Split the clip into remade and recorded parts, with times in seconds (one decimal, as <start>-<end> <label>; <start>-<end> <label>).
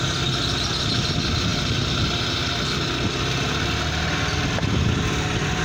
0.0-5.6 recorded